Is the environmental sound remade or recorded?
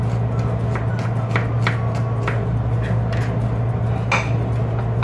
recorded